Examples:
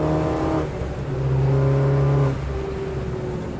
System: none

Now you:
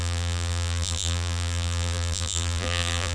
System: vocoder, BigVGAN v2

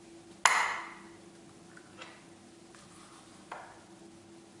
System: none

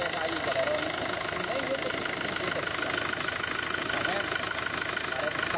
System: none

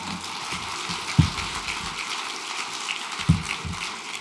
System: none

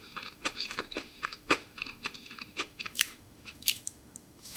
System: autoencoder, DAC-VAE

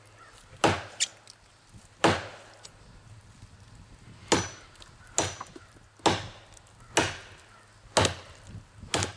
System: none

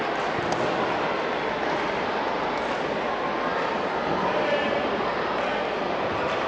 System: none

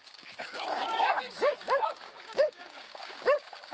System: codec, DAC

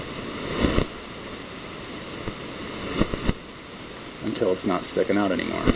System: none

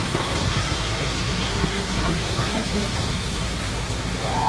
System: codec, SNAC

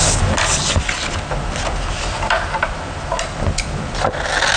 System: vocoder, BigVGAN v2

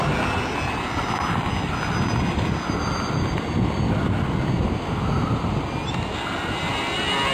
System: none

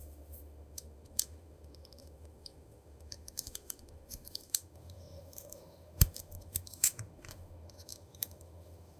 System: autoencoder, DAC-VAE